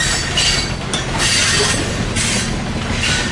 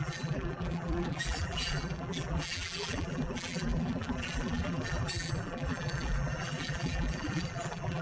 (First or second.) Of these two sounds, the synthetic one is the second